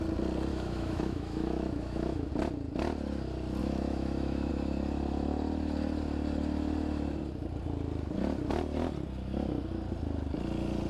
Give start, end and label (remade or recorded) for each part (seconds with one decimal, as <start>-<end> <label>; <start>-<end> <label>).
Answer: 0.0-0.5 recorded; 0.5-2.3 remade; 2.3-3.6 recorded; 3.6-4.5 remade; 4.5-10.9 recorded